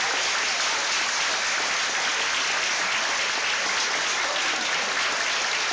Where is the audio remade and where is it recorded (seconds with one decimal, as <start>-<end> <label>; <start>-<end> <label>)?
0.0-5.7 recorded